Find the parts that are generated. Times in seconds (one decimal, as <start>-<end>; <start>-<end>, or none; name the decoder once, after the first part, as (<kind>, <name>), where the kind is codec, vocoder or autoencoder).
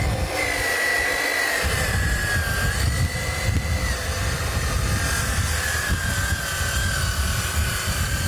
0.0-0.9 (vocoder, BigVGAN v2); 1.7-2.2; 5.2-8.3